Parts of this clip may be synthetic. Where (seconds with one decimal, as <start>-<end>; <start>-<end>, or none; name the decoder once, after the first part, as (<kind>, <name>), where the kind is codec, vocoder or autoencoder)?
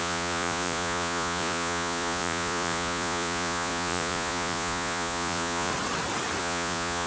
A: 0.0-5.7 (vocoder, Vocos); 6.4-7.1